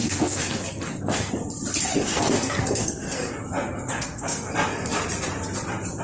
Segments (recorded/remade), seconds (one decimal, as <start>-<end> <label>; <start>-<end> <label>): 0.0-1.3 remade; 1.3-1.9 recorded; 1.9-3.3 remade; 3.3-3.9 recorded; 3.9-4.5 remade; 4.5-6.0 recorded